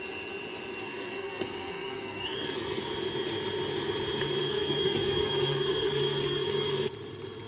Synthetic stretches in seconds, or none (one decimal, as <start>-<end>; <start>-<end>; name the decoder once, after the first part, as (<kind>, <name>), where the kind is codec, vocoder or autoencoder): 0.8-2.8 (codec, SNAC); 4.4-6.9